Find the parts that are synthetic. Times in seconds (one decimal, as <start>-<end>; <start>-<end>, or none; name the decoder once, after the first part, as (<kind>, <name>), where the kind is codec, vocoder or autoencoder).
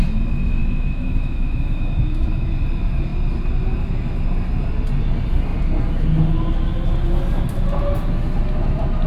0.6-2.5 (autoencoder, DAC-VAE)